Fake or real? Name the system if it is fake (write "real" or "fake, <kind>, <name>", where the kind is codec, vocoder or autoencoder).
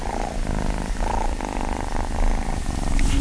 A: fake, vocoder, BigVGAN v2